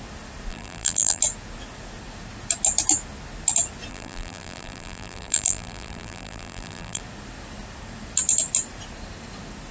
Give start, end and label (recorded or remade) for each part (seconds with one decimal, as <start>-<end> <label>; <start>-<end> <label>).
0.0-0.5 recorded; 0.5-1.2 remade; 1.2-3.9 recorded; 3.9-7.0 remade; 7.0-9.7 recorded